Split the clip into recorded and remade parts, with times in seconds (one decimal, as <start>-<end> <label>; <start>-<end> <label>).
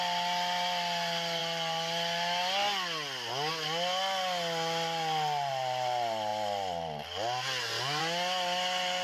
0.0-9.0 recorded